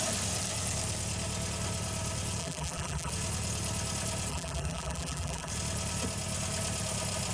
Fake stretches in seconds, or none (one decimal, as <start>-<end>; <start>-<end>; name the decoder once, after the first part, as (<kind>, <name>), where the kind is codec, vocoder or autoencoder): 2.4-3.1 (vocoder, BigVGAN v2); 4.3-5.5